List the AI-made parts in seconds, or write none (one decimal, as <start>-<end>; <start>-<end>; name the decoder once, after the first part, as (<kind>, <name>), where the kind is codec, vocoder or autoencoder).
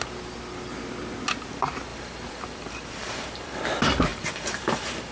1.9-3.6 (vocoder, BigVGAN v2); 4.1-5.1